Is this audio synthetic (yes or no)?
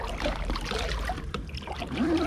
yes